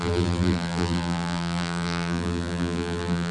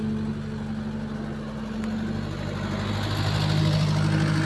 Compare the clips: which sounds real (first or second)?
second